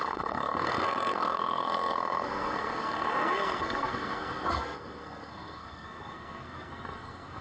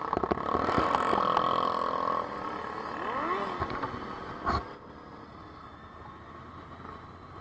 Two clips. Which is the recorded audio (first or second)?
second